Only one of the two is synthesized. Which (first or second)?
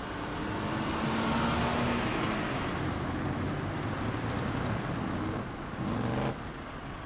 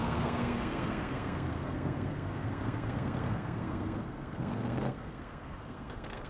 second